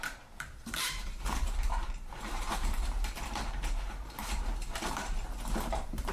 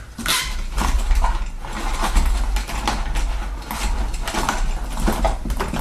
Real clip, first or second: second